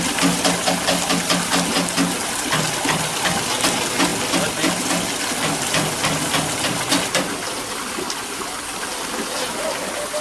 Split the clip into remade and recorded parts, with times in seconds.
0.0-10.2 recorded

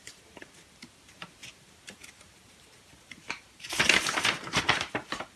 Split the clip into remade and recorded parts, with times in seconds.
0.0-5.4 remade